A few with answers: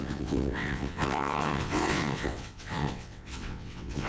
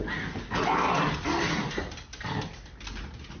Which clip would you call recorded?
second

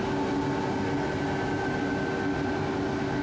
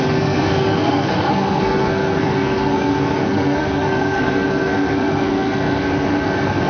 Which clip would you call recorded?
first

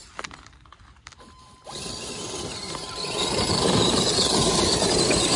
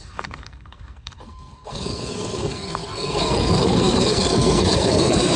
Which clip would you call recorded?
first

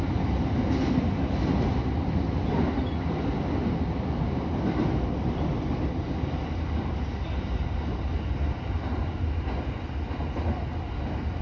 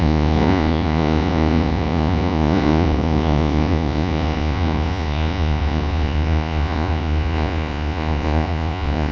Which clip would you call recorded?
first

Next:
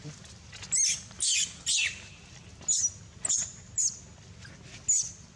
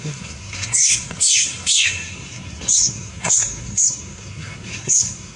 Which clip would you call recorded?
first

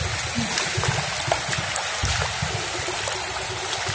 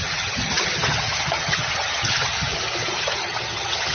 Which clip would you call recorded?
first